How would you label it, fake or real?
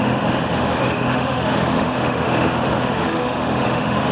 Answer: fake